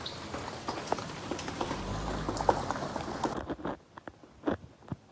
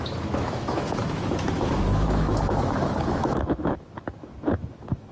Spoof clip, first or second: second